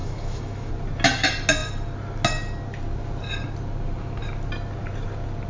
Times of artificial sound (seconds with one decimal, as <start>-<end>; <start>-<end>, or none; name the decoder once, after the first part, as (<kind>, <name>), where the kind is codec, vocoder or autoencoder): 0.0-0.7 (autoencoder, DAC-VAE)